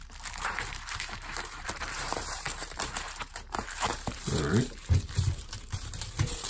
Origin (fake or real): fake